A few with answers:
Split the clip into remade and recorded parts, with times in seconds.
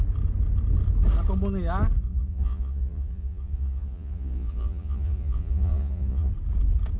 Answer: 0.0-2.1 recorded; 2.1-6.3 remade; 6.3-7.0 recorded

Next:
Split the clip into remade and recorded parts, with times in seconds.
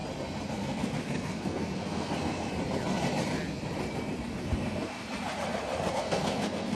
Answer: 0.0-0.5 recorded; 0.5-2.5 remade; 2.5-4.4 recorded; 4.4-5.0 remade; 5.0-5.9 recorded; 5.9-6.7 remade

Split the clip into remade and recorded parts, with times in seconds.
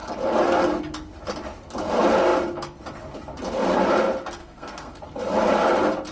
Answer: 0.0-4.4 recorded; 4.4-5.0 remade; 5.0-6.1 recorded